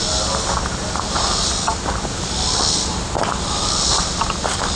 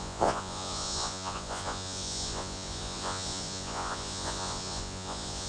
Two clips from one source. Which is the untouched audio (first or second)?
first